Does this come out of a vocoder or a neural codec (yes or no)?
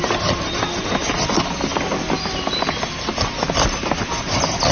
no